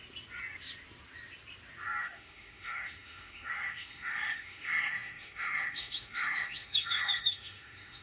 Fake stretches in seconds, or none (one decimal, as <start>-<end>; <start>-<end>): 2.0-8.0